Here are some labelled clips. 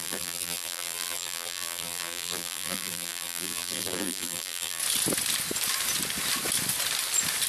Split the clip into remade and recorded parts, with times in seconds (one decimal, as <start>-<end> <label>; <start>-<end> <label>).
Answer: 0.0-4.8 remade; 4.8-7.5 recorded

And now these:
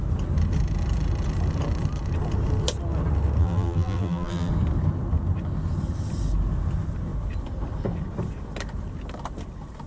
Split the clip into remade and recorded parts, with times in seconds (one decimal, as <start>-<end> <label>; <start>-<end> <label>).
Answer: 0.0-3.4 recorded; 3.4-4.5 remade; 4.5-9.9 recorded

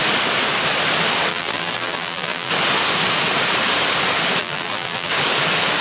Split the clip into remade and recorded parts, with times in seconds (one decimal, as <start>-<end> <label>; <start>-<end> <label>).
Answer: 0.0-1.3 recorded; 1.3-2.5 remade; 2.5-4.4 recorded; 4.4-5.1 remade; 5.1-5.8 recorded

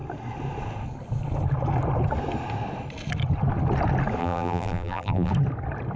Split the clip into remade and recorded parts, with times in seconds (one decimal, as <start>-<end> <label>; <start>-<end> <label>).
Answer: 0.0-4.2 recorded; 4.2-5.3 remade; 5.3-6.0 recorded

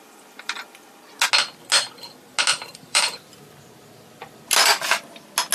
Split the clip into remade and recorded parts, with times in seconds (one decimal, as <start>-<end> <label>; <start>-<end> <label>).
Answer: 0.0-2.5 recorded; 2.5-3.4 remade; 3.4-5.5 recorded

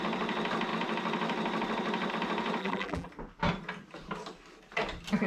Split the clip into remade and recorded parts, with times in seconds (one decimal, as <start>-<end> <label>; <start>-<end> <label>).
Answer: 0.0-2.6 recorded; 2.6-3.1 remade; 3.1-5.3 recorded